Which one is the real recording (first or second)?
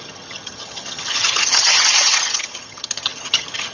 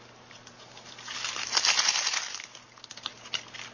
second